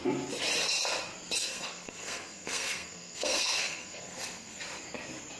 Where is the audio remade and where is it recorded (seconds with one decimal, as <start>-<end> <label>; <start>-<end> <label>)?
0.0-1.4 recorded; 1.4-4.6 remade; 4.6-5.4 recorded